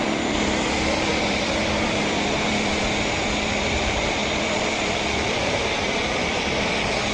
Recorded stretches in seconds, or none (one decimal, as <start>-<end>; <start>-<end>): none